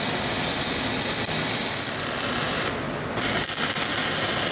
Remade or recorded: recorded